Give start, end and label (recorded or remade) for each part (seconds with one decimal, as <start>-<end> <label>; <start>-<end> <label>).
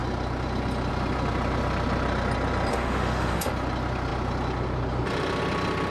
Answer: 0.0-2.7 recorded; 2.7-3.5 remade; 3.5-5.9 recorded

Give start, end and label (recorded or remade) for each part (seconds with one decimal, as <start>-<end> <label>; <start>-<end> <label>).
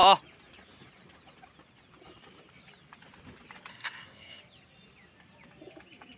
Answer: 0.0-3.7 recorded; 3.7-4.4 remade; 4.4-6.2 recorded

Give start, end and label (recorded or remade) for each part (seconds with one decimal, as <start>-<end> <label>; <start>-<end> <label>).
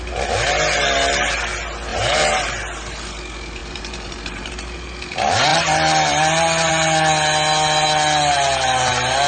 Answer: 0.0-1.9 recorded; 1.9-2.5 remade; 2.5-3.6 recorded; 3.6-4.5 remade; 4.5-9.3 recorded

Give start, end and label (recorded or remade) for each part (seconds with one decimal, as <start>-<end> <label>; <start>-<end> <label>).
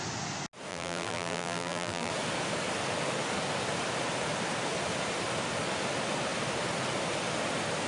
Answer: 0.0-0.7 recorded; 0.7-2.1 remade; 2.1-7.9 recorded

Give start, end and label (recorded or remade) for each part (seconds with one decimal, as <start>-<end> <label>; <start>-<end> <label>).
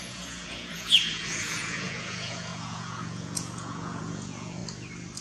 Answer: 0.0-4.6 remade; 4.6-5.2 recorded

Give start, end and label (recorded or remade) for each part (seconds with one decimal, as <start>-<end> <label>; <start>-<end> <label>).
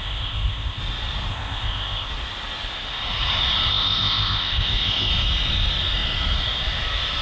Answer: 0.0-0.8 remade; 0.8-1.3 recorded; 1.3-2.1 remade; 2.1-3.7 recorded; 3.7-5.1 remade; 5.1-7.2 recorded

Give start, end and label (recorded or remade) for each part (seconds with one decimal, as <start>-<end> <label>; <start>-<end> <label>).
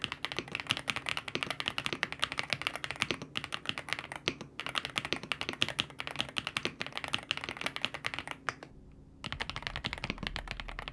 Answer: 0.0-10.9 recorded